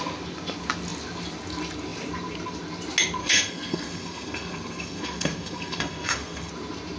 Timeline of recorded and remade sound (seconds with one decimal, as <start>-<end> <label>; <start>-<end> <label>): 0.0-3.2 recorded; 3.2-6.5 remade; 6.5-7.0 recorded